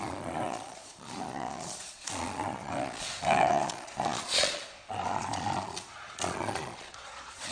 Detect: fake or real fake